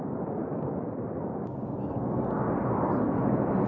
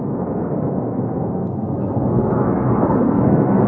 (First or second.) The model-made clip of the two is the second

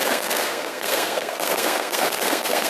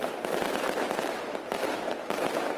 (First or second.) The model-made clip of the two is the first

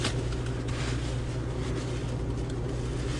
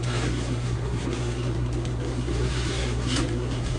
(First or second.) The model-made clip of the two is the second